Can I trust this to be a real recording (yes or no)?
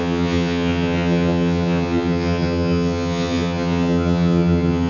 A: no